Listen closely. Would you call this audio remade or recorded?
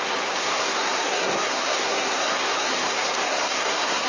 remade